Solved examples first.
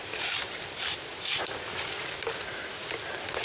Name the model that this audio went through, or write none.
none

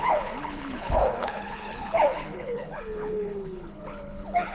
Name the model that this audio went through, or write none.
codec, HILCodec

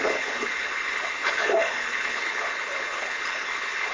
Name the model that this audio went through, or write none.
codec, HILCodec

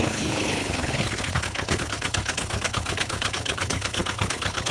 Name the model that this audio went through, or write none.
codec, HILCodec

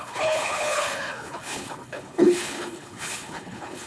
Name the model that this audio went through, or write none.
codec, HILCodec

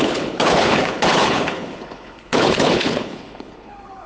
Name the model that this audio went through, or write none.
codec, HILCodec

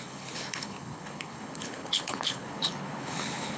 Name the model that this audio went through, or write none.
codec, HILCodec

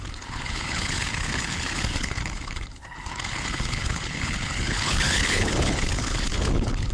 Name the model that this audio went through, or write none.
codec, HILCodec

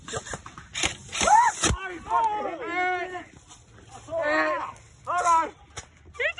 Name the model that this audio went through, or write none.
none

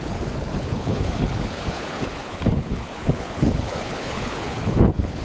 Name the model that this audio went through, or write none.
codec, HILCodec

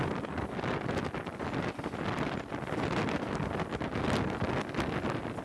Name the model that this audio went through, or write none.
none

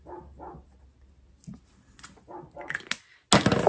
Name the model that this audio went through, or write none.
none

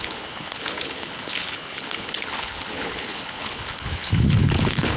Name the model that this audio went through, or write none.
codec, HILCodec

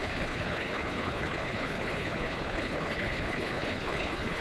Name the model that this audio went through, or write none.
codec, HILCodec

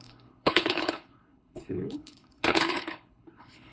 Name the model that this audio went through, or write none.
codec, HILCodec